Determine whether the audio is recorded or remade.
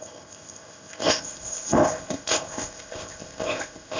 remade